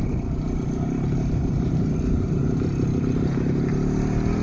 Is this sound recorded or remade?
recorded